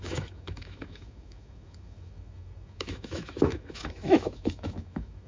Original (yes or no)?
no